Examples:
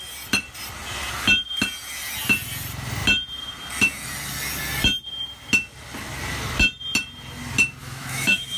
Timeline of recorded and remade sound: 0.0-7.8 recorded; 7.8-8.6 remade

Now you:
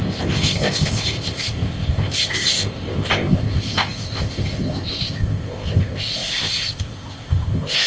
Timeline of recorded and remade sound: 0.0-7.9 remade

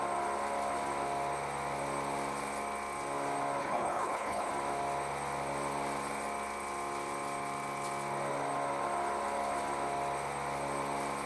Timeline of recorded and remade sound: 0.0-3.6 recorded; 3.6-4.5 remade; 4.5-11.3 recorded

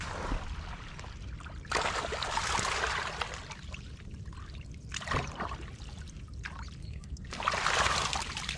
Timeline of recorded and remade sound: 0.0-6.8 recorded; 6.8-7.4 remade; 7.4-8.6 recorded

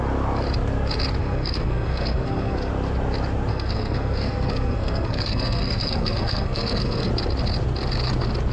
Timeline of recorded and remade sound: 0.0-1.2 recorded; 1.2-2.7 remade; 2.7-3.5 recorded; 3.5-7.1 remade; 7.1-8.5 recorded

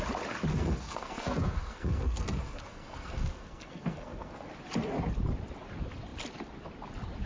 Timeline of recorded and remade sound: 0.0-0.5 recorded; 0.5-4.5 remade; 4.5-7.3 recorded

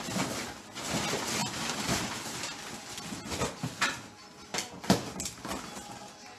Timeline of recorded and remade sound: 0.0-6.4 recorded

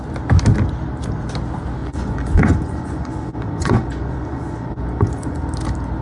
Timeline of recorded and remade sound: 0.0-1.8 recorded; 1.8-5.4 remade; 5.4-6.0 recorded